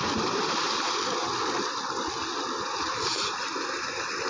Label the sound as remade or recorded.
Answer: recorded